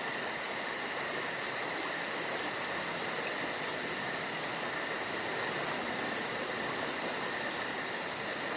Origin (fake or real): real